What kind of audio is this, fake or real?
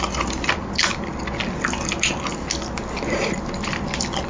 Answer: real